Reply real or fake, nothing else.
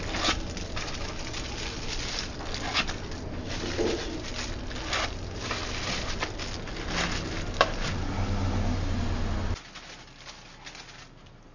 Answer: real